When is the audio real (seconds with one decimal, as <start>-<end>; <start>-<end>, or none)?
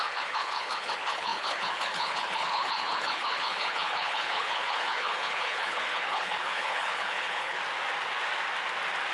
7.6-9.1